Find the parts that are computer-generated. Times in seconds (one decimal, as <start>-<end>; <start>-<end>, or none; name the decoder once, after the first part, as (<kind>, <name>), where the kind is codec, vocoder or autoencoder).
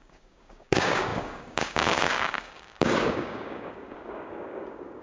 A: 0.0-5.0 (codec, DAC)